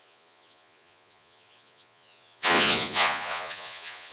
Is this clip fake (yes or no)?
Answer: yes